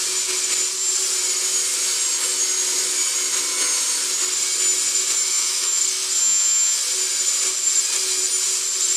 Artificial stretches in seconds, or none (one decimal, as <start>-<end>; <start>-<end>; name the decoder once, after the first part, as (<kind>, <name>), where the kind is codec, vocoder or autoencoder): 5.2-5.8 (autoencoder, DAC-VAE); 6.2-6.8